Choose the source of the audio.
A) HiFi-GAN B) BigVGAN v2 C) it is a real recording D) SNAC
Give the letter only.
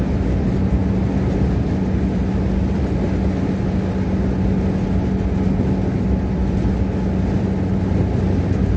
C